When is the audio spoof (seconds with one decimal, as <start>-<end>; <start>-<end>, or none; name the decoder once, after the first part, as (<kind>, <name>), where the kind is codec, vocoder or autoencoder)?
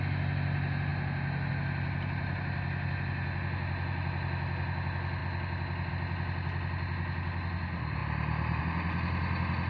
none